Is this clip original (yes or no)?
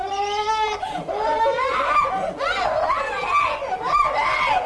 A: yes